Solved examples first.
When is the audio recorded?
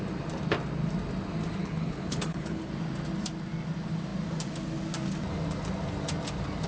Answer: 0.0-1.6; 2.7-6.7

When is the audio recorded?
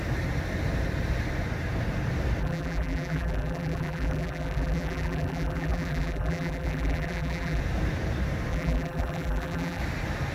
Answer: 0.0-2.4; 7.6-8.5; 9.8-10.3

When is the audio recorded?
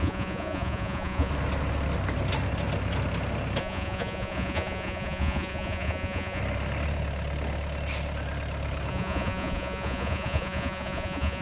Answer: 1.3-3.6; 6.4-8.9